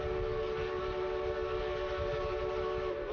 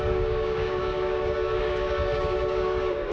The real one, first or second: first